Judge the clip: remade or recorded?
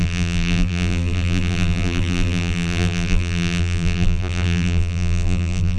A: remade